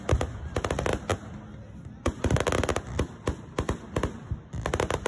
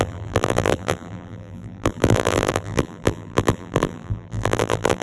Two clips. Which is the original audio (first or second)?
first